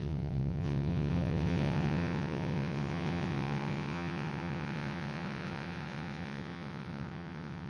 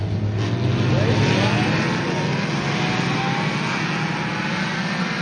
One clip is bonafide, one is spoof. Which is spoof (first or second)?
first